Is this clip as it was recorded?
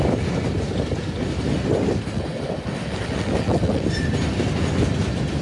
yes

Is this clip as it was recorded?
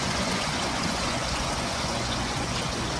no